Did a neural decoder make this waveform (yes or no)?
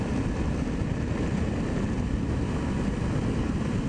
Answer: no